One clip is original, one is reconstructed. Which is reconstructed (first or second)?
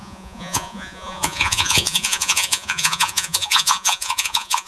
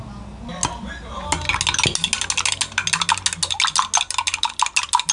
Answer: first